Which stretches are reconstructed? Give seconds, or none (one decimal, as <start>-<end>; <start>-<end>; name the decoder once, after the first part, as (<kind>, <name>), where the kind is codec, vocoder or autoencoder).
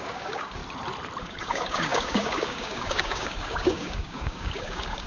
0.0-0.6 (codec, DAC); 1.2-5.1